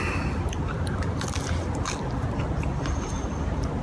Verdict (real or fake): real